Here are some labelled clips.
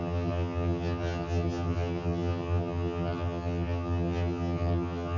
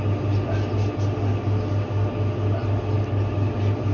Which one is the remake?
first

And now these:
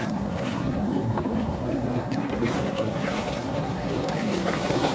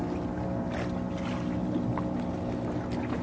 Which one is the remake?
first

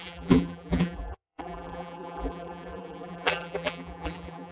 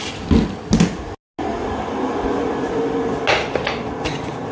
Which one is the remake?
first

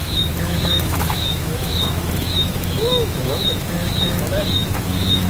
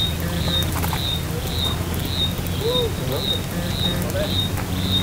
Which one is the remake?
first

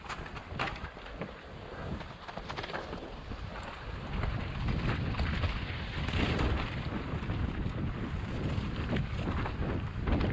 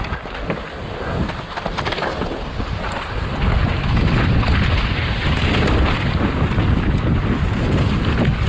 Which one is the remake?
first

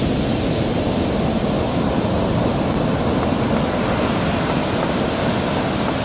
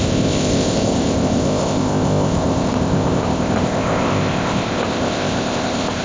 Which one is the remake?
second